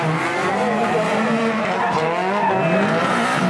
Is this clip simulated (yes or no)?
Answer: no